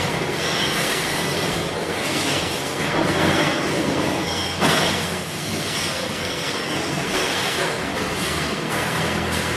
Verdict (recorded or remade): remade